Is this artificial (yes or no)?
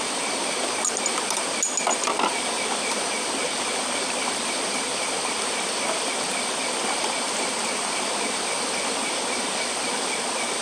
no